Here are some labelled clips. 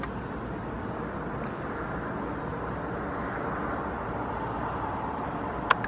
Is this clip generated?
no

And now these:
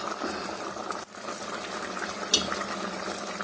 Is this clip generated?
no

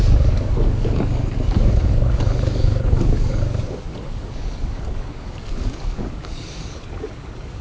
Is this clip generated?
yes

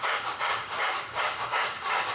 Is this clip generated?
yes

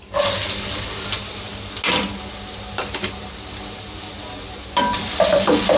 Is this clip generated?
no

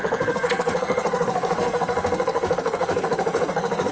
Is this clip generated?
yes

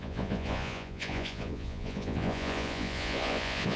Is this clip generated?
yes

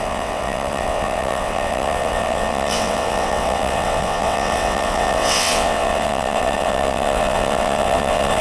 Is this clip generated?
yes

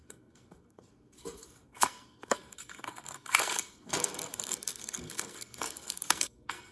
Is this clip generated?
yes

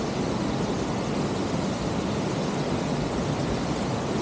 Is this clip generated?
no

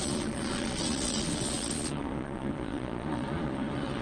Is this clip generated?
yes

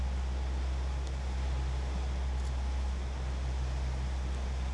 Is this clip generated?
no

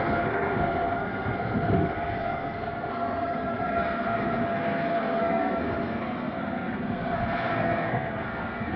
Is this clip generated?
yes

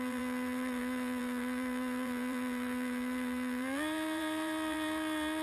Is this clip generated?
yes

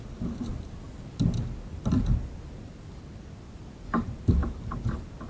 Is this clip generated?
no